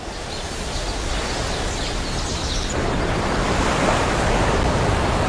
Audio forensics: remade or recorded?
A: recorded